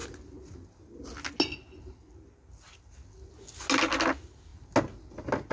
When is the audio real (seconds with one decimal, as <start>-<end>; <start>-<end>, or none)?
0.0-5.5